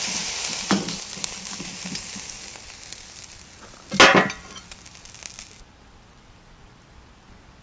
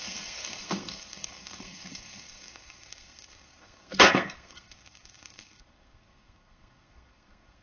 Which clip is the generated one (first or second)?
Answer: second